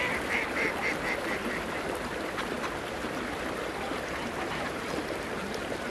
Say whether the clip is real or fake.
real